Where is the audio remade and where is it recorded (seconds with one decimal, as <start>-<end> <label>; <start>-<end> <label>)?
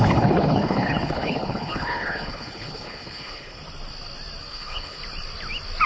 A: 0.0-3.6 remade; 3.6-4.5 recorded; 4.5-5.0 remade; 5.0-5.9 recorded